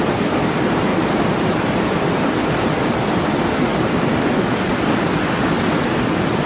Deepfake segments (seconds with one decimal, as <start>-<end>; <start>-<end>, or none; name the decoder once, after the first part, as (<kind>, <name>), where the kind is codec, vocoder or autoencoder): 0.9-2.6 (vocoder, BigVGAN v2); 3.7-5.4